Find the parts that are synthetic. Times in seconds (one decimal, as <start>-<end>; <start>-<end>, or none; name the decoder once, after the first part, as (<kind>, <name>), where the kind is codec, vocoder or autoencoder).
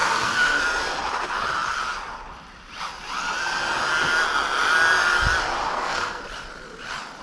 0.0-0.6 (codec, SNAC); 5.7-6.2